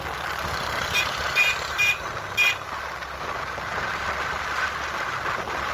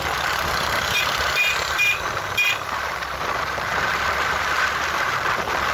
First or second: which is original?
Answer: first